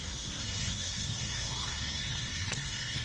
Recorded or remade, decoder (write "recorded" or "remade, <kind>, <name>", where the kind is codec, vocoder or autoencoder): remade, codec, SNAC